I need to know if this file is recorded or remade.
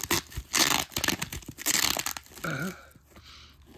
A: recorded